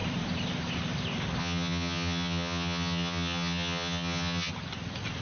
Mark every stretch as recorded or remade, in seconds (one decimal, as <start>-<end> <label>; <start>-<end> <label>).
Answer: 0.0-1.4 recorded; 1.4-4.5 remade; 4.5-5.2 recorded

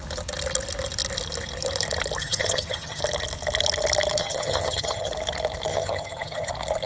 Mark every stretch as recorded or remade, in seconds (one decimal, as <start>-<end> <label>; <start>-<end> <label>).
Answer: 0.0-2.2 recorded; 2.2-3.0 remade; 3.0-4.2 recorded; 4.2-5.1 remade; 5.1-5.7 recorded; 5.7-6.5 remade; 6.5-6.9 recorded

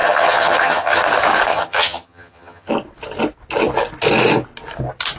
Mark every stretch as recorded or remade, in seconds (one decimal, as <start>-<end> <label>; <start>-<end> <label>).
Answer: 0.0-1.0 remade; 1.0-1.5 recorded; 1.5-2.7 remade; 2.7-5.2 recorded

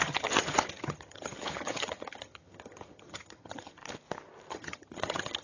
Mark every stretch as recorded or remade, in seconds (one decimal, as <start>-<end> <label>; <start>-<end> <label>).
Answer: 0.0-3.8 remade; 3.8-4.5 recorded; 4.5-5.4 remade

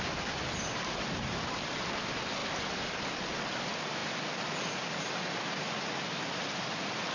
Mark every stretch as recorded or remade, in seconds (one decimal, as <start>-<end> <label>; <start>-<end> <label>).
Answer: 0.0-7.1 recorded